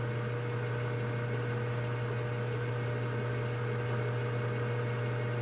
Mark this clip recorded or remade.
recorded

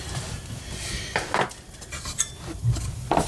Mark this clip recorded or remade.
recorded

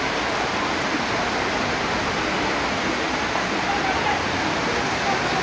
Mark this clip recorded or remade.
recorded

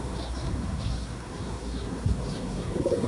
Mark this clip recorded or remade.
remade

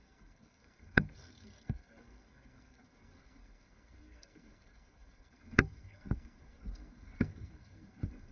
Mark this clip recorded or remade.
remade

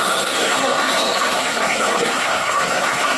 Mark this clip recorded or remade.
remade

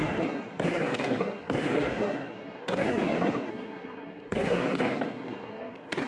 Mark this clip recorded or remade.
remade